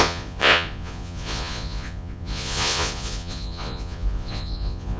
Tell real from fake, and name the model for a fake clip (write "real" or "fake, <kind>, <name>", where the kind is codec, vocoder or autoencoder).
fake, vocoder, Vocos